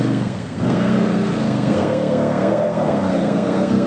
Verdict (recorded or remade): remade